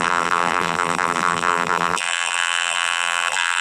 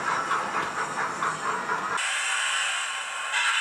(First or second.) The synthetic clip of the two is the first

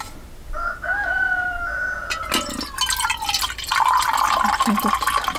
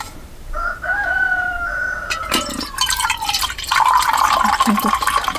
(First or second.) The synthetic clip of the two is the second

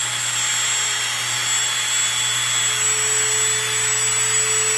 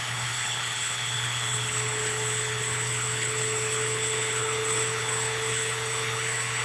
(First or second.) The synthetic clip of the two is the second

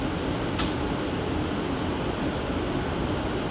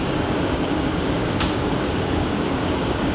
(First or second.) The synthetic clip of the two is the second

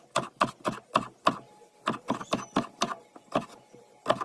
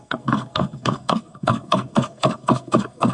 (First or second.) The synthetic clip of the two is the second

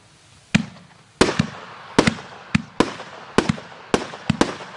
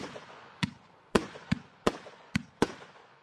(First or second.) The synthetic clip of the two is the second